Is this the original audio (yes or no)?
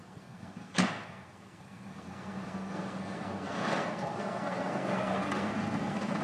no